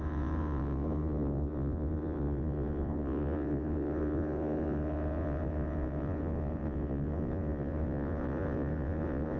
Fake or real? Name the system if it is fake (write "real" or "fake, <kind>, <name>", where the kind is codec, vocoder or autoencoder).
fake, vocoder, Vocos